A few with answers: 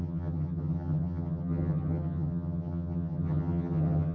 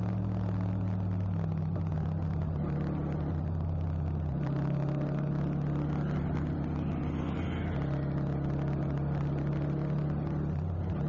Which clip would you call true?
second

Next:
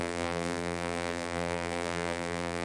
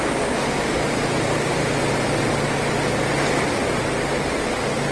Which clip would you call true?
second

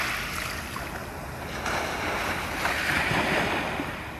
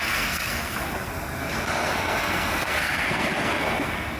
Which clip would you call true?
first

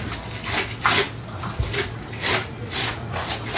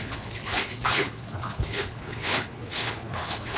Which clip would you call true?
first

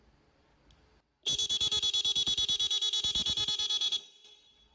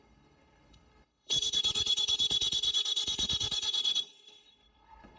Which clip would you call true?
first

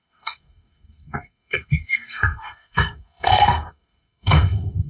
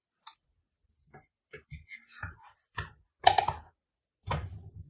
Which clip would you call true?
second